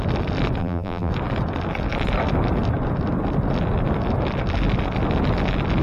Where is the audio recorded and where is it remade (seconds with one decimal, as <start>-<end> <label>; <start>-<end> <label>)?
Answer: 0.0-0.6 recorded; 0.6-1.1 remade; 1.1-5.8 recorded